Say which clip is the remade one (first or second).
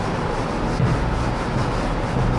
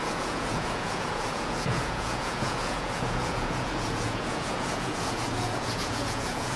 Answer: second